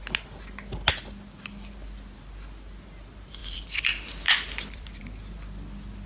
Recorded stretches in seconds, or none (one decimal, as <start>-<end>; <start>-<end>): 0.0-3.4; 5.0-6.1